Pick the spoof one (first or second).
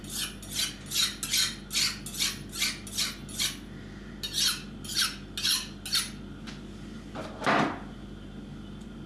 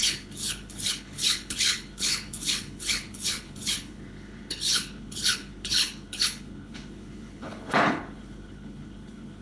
second